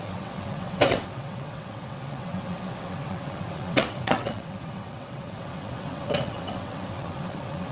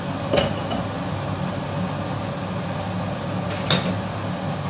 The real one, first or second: second